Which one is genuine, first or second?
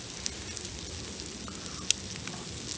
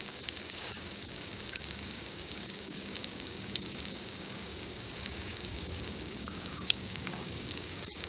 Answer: first